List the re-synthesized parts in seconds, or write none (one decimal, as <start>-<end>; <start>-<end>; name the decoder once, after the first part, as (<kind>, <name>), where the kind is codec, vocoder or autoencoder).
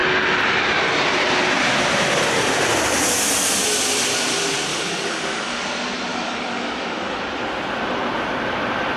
4.7-5.6 (codec, DAC); 6.1-7.2